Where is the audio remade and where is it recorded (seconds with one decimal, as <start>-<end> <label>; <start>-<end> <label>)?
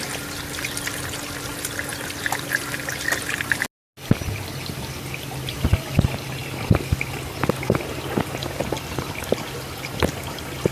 0.0-10.7 recorded